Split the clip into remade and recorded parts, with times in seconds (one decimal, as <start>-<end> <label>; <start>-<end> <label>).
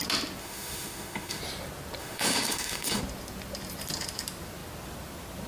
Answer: 0.0-0.4 recorded; 0.4-1.4 remade; 1.4-2.0 recorded; 2.0-3.0 remade; 3.0-5.5 recorded